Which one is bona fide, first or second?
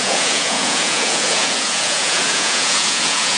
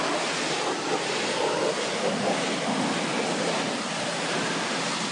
second